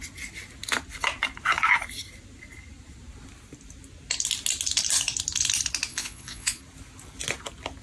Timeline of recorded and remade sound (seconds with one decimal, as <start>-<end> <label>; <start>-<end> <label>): 0.0-5.9 recorded; 5.9-6.6 remade; 6.6-7.8 recorded